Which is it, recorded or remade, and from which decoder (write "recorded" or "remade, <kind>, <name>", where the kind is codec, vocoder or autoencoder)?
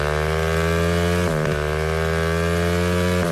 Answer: recorded